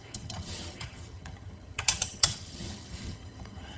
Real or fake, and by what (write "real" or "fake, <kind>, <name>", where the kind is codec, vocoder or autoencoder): fake, vocoder, HiFi-GAN